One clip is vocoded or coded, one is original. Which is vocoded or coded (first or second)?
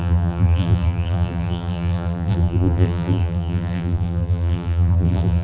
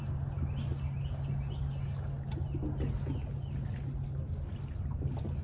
first